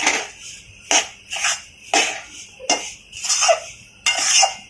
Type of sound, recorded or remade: recorded